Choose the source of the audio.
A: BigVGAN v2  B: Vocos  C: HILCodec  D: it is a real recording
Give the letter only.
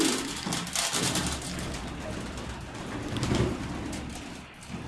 D